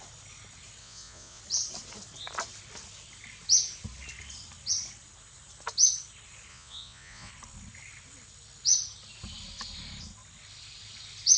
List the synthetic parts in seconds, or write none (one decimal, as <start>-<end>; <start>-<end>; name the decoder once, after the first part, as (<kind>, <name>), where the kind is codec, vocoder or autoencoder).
0.8-1.4 (vocoder, Vocos); 6.5-7.3